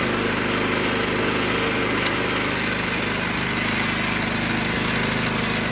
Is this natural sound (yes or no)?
yes